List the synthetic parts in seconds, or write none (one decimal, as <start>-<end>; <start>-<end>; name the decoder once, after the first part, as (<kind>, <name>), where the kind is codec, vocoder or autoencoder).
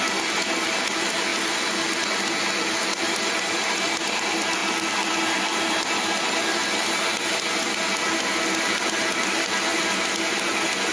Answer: none